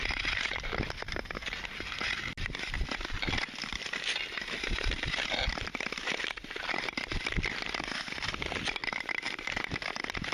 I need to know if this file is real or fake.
real